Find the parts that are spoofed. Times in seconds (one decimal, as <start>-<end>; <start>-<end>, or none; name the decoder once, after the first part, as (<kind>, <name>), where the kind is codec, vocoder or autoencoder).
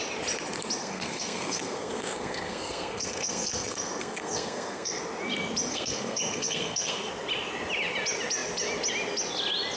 0.8-5.0 (codec, SNAC); 5.7-7.1